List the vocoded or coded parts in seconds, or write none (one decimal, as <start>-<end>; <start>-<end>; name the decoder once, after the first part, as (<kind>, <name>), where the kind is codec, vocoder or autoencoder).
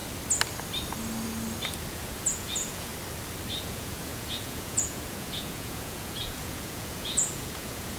1.9-2.9 (vocoder, Vocos); 3.6-8.0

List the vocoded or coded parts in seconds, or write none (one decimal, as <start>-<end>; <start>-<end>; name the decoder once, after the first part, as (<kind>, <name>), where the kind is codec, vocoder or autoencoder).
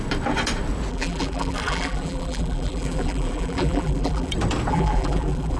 0.9-4.3 (vocoder, BigVGAN v2); 4.7-5.6